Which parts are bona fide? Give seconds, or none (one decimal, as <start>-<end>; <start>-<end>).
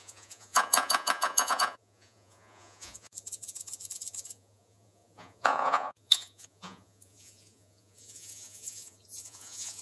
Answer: none